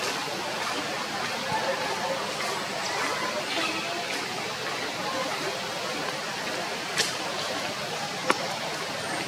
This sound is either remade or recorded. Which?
recorded